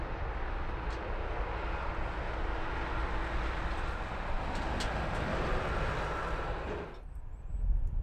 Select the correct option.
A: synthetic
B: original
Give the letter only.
B